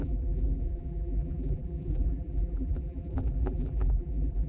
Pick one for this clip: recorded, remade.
remade